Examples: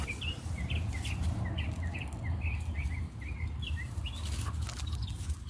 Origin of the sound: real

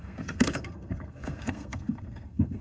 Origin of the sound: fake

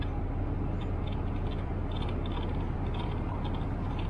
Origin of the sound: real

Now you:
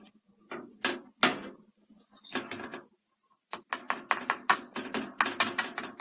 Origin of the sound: real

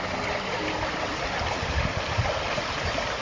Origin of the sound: real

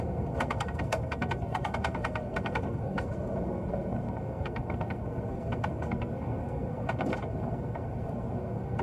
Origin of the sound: fake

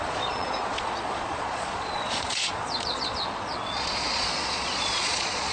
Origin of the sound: fake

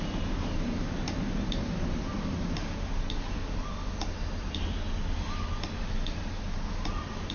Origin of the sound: real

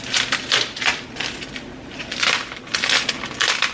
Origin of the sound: real